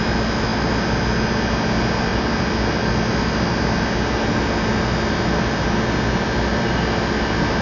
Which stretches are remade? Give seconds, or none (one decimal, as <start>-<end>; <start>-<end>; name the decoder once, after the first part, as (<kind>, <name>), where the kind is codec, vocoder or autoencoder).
2.1-2.9 (vocoder, BigVGAN v2)